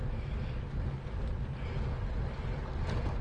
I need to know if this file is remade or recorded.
recorded